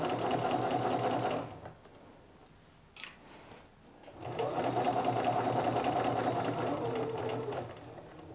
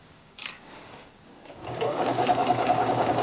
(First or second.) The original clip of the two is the first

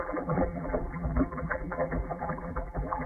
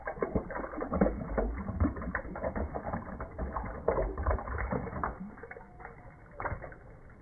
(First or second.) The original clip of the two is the second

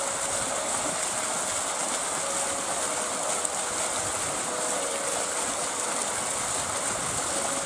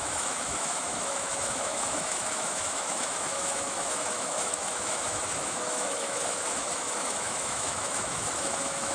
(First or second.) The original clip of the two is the first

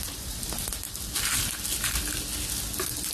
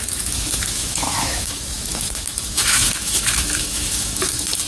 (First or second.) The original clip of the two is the first